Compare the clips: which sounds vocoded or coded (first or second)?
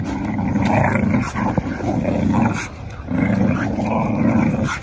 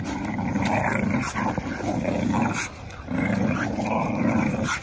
second